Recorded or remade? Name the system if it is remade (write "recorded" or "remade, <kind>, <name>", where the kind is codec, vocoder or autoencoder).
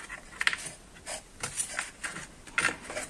recorded